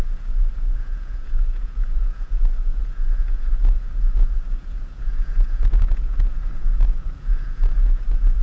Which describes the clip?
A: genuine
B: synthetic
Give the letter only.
B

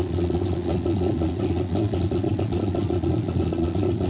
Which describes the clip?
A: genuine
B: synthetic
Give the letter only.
B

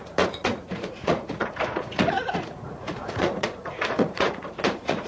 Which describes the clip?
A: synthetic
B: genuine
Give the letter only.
A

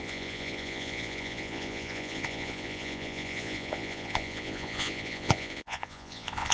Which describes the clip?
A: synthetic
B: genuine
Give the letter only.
A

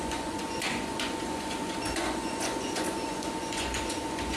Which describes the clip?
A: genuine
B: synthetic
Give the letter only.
B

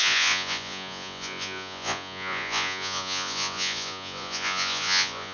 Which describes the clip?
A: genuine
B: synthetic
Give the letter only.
B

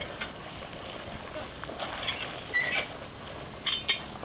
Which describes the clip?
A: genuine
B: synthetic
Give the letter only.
A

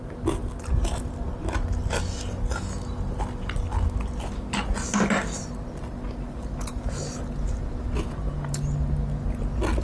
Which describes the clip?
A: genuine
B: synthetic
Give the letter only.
A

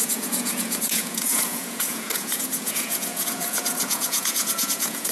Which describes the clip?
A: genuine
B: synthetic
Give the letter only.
B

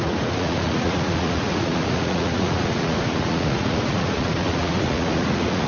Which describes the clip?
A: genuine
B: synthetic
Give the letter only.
B